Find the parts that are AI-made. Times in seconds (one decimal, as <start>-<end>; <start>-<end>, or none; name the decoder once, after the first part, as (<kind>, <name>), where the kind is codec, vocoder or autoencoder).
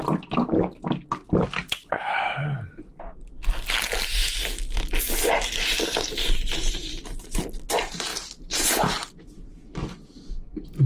none